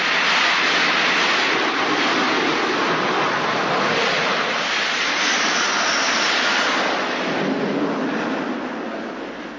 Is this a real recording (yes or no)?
yes